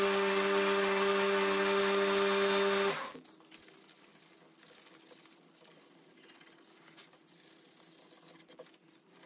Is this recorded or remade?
recorded